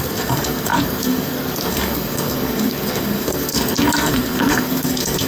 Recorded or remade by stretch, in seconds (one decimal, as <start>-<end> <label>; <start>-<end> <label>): 0.0-5.3 remade